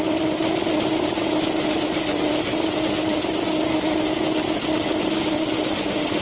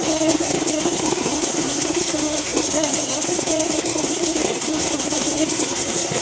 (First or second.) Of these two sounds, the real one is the first